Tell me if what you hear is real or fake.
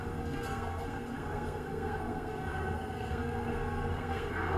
fake